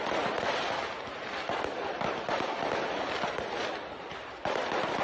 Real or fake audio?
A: fake